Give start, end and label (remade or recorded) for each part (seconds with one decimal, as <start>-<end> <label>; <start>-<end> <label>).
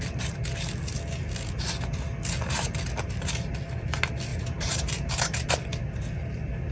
0.0-4.3 recorded; 4.3-5.5 remade; 5.5-6.7 recorded